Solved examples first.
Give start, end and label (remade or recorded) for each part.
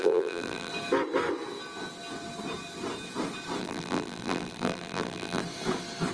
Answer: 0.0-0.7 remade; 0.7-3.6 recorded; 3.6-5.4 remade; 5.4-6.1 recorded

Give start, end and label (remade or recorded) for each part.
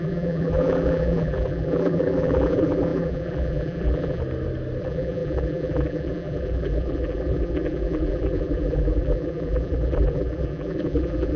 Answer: 0.0-4.2 remade; 4.2-4.8 recorded; 4.8-11.4 remade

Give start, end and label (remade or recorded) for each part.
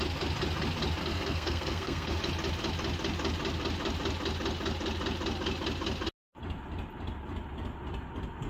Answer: 0.0-1.0 recorded; 1.0-2.2 remade; 2.2-8.5 recorded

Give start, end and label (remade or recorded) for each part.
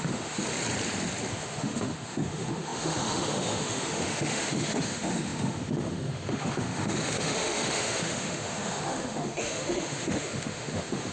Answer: 0.0-0.4 remade; 0.4-1.3 recorded; 1.3-11.1 remade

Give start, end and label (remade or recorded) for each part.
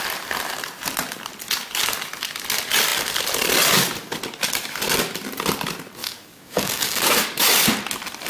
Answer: 0.0-6.0 recorded; 6.0-7.4 remade; 7.4-8.3 recorded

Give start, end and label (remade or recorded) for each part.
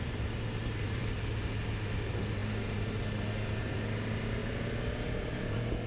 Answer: 0.0-5.9 recorded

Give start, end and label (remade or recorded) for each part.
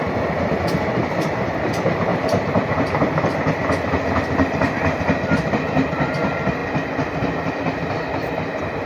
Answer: 0.0-8.9 recorded